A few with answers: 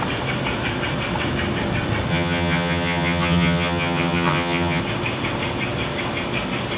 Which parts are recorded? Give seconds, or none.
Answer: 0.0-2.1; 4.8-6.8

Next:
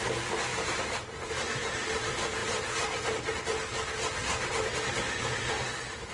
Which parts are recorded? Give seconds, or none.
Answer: 0.0-0.5; 1.3-2.4; 5.5-6.1

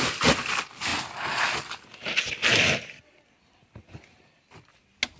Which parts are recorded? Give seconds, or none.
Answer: 0.0-5.2

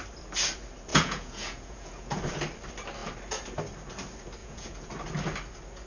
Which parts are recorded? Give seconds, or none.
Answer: 0.0-0.9; 2.2-4.4; 4.9-5.9

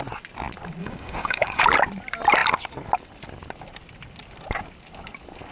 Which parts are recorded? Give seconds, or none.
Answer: 0.0-0.8; 1.6-5.5

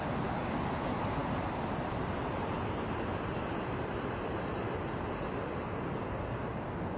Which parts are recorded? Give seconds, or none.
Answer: 0.0-7.0

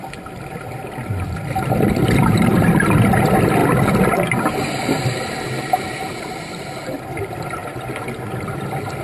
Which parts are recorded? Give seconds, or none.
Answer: 3.6-4.9; 7.6-9.0

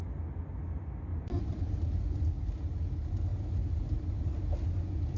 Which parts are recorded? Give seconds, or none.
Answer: 0.0-1.1; 1.6-3.3; 4.1-5.2